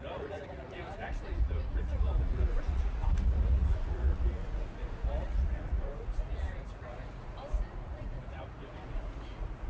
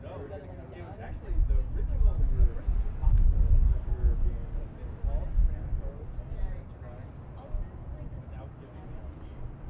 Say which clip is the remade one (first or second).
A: first